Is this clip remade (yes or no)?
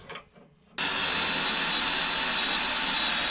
no